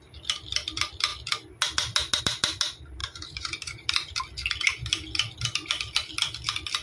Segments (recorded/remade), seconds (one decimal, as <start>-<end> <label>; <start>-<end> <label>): 0.0-3.0 recorded; 3.0-4.2 remade; 4.2-6.8 recorded